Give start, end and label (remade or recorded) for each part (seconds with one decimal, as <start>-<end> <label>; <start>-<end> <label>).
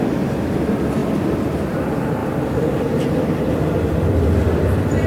0.0-5.1 recorded